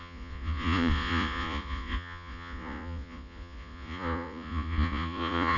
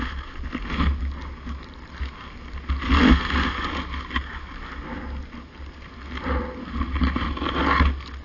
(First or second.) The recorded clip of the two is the second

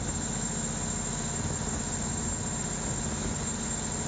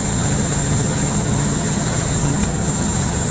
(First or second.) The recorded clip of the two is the first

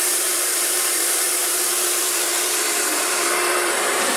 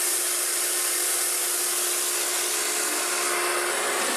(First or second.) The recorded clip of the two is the second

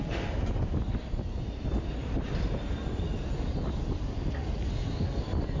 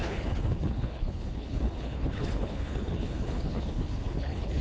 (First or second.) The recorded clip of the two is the first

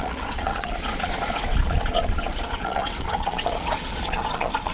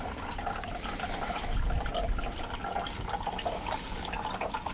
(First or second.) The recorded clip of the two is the second